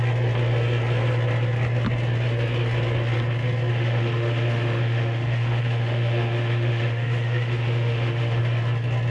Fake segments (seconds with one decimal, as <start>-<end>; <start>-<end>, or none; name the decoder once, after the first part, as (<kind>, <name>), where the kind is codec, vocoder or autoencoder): 3.7-8.4 (autoencoder, DAC-VAE)